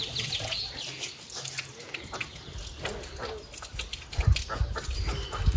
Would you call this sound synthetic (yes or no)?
no